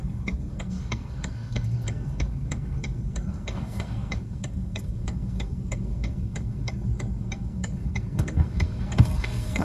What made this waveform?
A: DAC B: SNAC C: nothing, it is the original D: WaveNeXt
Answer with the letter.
B